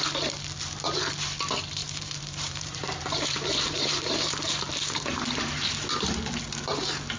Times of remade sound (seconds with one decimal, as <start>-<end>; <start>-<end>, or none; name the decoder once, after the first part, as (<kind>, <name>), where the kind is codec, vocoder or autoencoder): 1.8-4.6 (vocoder, BigVGAN v2)